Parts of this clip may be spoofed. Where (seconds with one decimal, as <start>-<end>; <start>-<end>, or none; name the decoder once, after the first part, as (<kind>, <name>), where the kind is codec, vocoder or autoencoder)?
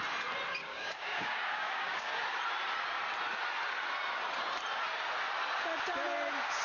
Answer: 0.6-2.1 (codec, DAC)